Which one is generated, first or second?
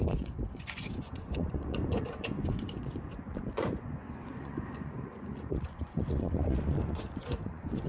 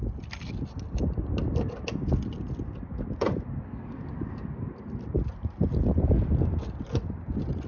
first